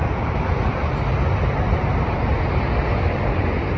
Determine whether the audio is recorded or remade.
recorded